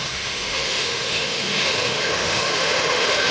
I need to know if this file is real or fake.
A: fake